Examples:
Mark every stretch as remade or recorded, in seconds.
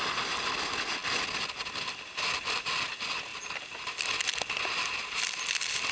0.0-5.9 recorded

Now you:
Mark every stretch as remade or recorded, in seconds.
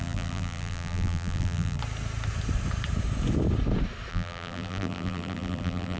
0.0-1.8 remade; 1.8-4.1 recorded; 4.1-6.0 remade